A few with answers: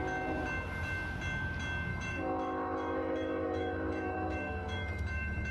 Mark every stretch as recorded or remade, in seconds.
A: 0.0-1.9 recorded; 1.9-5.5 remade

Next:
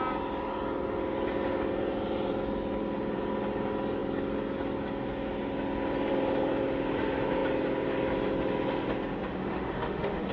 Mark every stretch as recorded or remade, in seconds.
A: 0.0-9.4 recorded; 9.4-10.3 remade